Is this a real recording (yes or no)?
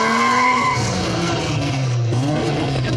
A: no